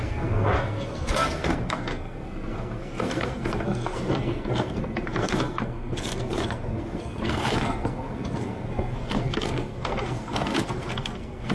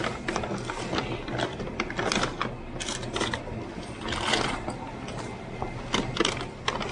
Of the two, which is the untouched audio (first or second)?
second